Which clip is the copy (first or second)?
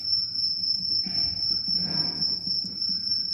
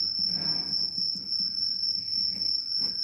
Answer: first